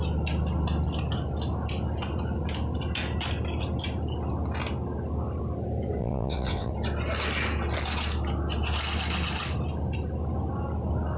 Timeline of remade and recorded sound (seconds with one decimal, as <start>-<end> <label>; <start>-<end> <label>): 0.0-6.0 recorded; 6.0-6.7 remade; 6.7-11.2 recorded